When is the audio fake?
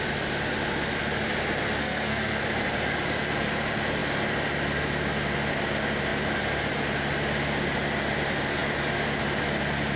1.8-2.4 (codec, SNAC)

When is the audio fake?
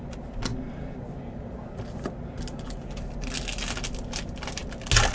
none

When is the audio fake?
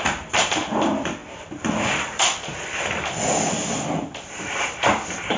none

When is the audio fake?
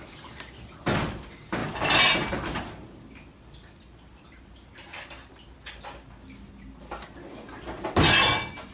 none